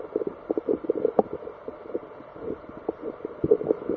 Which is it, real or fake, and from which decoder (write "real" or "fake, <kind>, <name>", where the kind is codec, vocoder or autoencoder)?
real